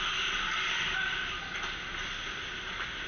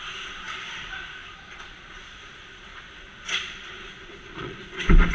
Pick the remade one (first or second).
second